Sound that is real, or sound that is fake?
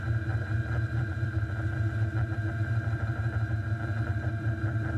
fake